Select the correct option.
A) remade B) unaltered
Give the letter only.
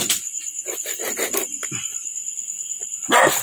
B